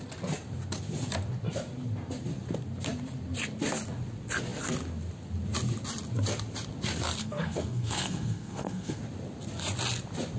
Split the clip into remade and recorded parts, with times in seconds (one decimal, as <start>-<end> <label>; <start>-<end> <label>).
0.0-7.2 recorded; 7.2-9.0 remade; 9.0-10.4 recorded